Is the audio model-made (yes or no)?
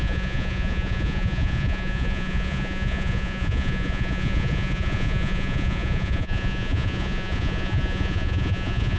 yes